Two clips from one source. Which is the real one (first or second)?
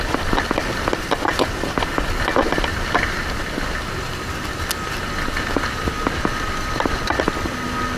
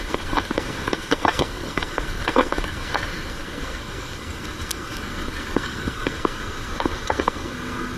first